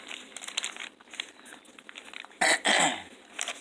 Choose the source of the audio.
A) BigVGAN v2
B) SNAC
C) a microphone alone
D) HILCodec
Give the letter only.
C